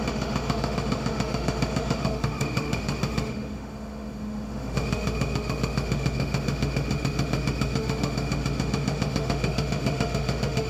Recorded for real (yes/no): no